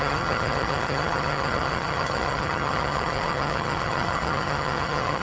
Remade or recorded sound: remade